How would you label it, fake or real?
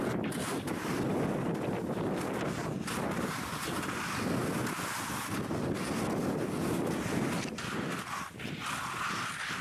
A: real